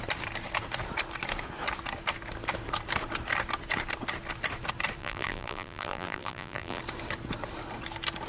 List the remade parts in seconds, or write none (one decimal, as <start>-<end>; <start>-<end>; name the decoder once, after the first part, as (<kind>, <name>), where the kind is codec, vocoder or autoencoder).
5.0-6.8 (vocoder, BigVGAN v2)